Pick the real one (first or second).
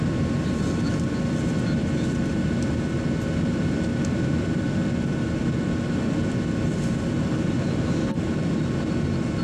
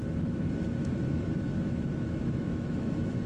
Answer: first